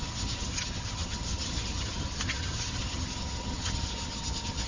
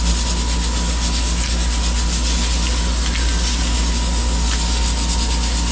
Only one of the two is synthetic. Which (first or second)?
first